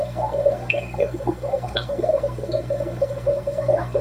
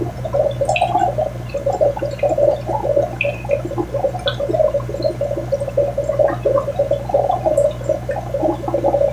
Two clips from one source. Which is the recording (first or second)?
second